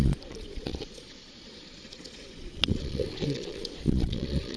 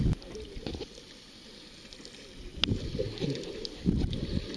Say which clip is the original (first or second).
second